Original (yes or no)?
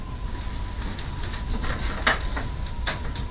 yes